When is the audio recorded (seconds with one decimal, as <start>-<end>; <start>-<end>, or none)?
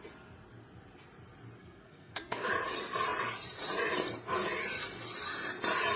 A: 0.0-1.6; 2.5-6.0